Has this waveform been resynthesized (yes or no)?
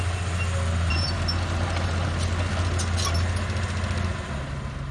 no